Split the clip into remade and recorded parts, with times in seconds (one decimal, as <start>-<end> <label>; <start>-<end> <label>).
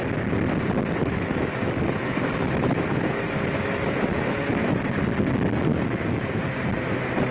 0.0-1.0 recorded; 1.0-5.0 remade; 5.0-5.7 recorded; 5.7-6.4 remade; 6.4-7.3 recorded